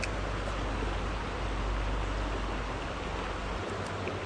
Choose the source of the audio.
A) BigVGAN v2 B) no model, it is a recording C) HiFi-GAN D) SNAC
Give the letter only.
B